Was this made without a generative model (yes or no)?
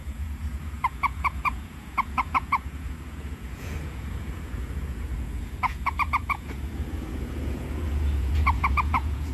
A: no